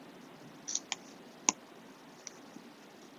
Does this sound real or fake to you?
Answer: real